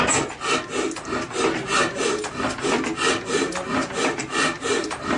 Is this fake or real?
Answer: real